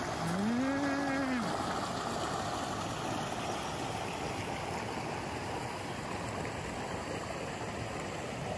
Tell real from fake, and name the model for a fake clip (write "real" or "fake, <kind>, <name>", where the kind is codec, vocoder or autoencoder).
real